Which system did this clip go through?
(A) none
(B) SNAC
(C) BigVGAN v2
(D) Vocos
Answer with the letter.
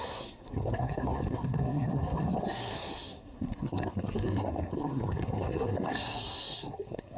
B